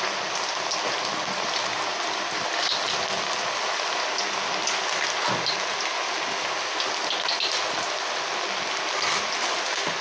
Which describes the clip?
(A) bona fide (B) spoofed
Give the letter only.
A